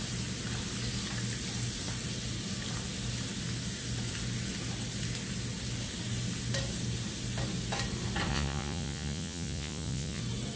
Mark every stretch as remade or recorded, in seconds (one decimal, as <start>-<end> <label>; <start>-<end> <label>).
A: 0.0-8.3 recorded; 8.3-10.2 remade; 10.2-10.6 recorded